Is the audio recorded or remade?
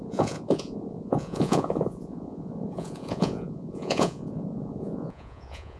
remade